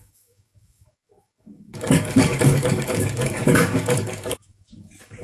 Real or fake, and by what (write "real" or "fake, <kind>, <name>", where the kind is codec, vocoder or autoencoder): fake, codec, DAC